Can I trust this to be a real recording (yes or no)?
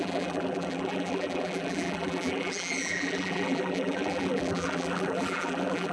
no